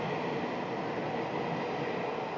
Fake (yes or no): no